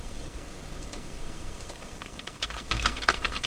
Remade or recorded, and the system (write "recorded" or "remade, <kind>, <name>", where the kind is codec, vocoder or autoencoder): remade, codec, SNAC